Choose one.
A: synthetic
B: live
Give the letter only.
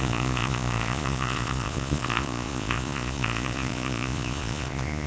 A